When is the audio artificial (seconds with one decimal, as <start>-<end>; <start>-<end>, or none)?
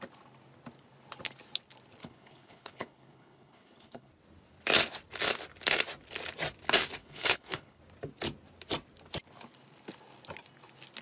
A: 2.0-4.1; 7.0-7.8